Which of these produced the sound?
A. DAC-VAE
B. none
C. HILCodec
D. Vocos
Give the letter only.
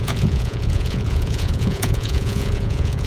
D